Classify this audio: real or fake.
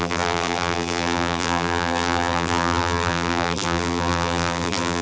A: fake